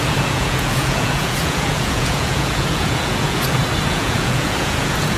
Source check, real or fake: fake